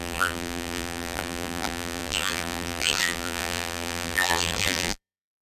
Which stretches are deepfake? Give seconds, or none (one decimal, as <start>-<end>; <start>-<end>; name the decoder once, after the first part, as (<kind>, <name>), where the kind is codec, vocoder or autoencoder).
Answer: 0.0-5.4 (vocoder, BigVGAN v2)